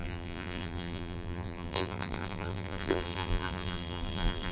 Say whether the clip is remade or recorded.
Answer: remade